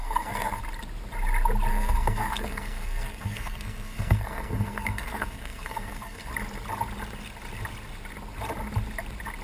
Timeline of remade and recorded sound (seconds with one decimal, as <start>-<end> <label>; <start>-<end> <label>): 0.0-0.6 remade; 0.6-1.7 recorded; 1.7-6.3 remade; 6.3-9.4 recorded